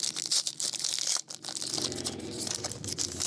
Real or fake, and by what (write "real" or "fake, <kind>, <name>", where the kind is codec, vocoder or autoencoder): real